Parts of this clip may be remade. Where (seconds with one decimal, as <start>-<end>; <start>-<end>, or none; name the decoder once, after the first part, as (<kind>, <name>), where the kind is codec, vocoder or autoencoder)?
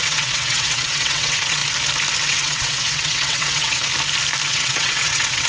0.0-1.6 (vocoder, WaveNeXt); 2.2-3.9; 4.5-5.5